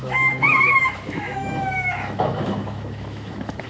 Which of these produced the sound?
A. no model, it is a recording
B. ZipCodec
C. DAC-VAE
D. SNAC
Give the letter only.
C